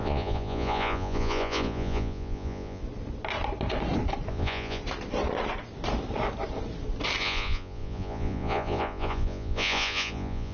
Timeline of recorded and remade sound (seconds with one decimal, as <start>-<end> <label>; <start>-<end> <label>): 0.0-2.8 remade; 2.8-4.3 recorded; 4.3-4.8 remade; 4.8-7.2 recorded; 7.2-10.5 remade